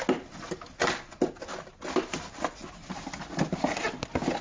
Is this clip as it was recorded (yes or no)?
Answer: yes